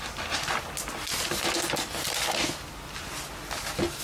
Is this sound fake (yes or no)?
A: no